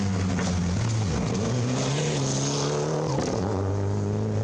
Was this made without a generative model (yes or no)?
yes